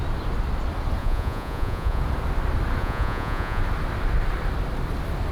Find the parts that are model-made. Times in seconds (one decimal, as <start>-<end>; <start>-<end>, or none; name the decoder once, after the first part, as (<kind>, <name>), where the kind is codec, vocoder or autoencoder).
1.0-2.0 (vocoder, Vocos); 2.8-3.6